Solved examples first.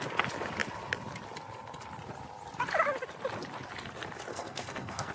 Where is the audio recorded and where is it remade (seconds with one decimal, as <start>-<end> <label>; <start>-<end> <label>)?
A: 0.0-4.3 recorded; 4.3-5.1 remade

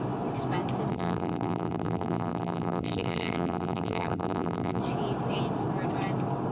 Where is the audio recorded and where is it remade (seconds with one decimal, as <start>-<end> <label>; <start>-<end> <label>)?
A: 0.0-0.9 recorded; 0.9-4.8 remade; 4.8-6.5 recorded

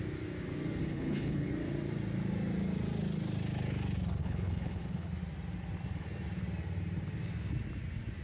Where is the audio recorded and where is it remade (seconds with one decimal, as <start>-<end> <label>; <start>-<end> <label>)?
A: 0.0-0.8 recorded; 0.8-1.5 remade; 1.5-4.2 recorded; 4.2-5.1 remade; 5.1-8.2 recorded